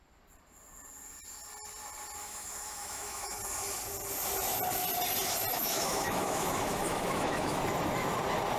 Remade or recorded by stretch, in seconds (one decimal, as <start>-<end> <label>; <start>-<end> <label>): 0.0-2.2 recorded; 2.2-3.4 remade; 3.4-5.5 recorded; 5.5-7.6 remade; 7.6-8.6 recorded